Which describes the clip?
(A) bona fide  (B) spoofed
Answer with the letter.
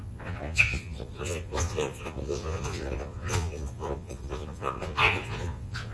B